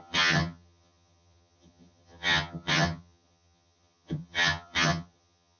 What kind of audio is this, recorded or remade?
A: remade